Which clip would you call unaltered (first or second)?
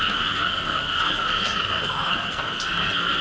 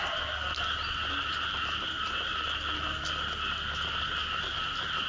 second